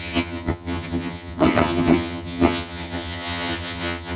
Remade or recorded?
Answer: remade